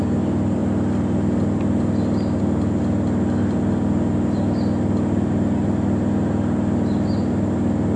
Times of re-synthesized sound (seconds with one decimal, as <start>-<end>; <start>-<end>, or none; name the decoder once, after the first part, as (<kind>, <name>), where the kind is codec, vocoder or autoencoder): none